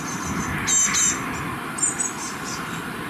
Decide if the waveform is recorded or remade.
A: recorded